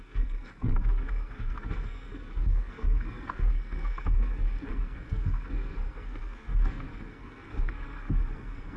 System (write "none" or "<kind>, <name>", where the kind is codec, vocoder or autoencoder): codec, SNAC